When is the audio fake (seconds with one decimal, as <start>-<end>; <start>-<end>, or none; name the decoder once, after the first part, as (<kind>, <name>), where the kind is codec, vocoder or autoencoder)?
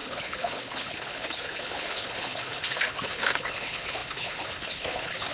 0.0-5.3 (codec, HILCodec)